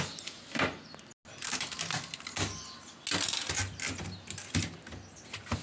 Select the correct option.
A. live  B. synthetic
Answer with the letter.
A